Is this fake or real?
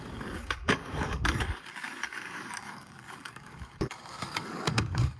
fake